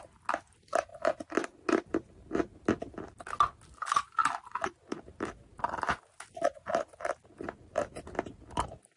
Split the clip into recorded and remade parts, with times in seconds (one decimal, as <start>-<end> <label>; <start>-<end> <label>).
0.0-9.0 recorded